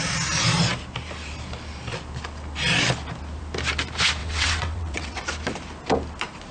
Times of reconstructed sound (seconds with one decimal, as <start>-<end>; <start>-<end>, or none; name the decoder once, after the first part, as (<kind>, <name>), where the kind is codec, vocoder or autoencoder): 4.2-5.2 (vocoder, WaveNeXt)